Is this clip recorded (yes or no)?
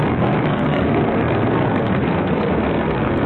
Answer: no